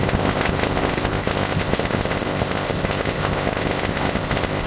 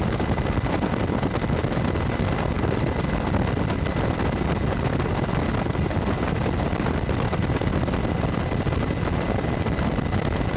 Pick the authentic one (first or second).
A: second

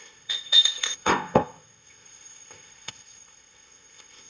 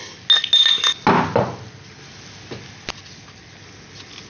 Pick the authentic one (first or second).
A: second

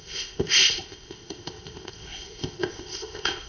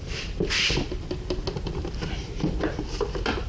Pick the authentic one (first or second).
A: second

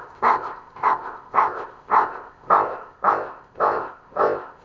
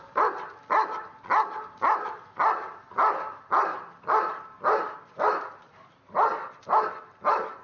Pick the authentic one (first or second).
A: second